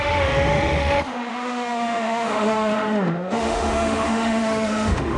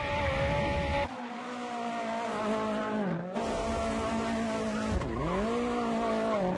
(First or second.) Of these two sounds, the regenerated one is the first